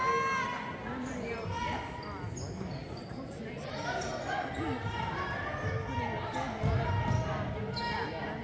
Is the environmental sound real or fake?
real